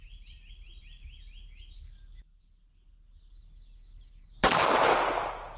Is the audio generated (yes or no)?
no